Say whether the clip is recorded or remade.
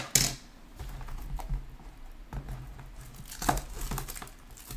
recorded